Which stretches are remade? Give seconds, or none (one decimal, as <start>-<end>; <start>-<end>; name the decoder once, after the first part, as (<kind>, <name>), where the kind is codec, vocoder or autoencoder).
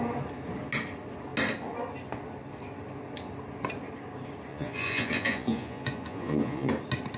4.5-6.7 (vocoder, Vocos)